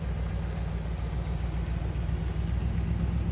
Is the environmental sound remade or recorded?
recorded